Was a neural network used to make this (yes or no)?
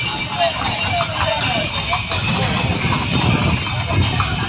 no